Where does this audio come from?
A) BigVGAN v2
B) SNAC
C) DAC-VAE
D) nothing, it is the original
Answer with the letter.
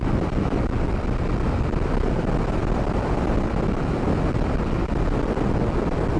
D